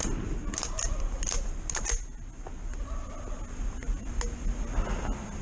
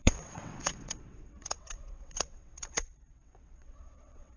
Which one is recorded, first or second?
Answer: first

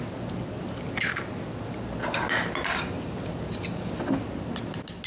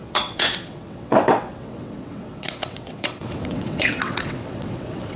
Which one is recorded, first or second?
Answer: first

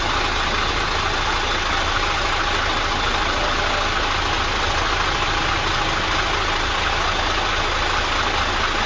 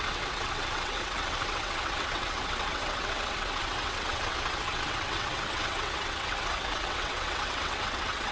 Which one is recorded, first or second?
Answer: first